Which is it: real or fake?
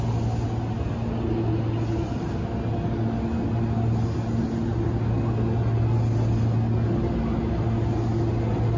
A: real